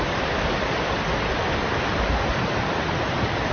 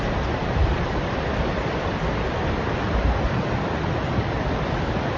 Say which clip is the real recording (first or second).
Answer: first